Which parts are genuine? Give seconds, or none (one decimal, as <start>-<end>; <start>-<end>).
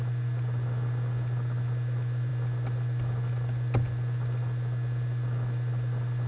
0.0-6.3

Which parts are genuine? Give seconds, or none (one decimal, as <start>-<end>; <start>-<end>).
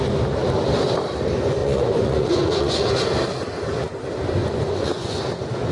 0.0-1.6; 2.9-4.4; 5.2-5.7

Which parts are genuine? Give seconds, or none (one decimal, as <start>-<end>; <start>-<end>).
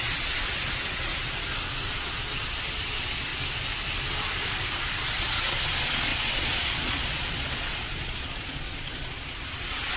1.1-1.9; 3.3-5.0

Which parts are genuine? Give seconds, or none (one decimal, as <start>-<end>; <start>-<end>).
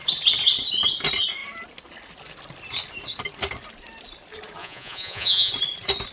0.0-4.6; 5.5-6.1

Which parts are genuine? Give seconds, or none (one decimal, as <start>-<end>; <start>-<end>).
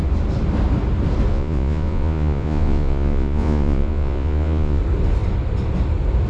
0.0-1.3; 4.8-6.3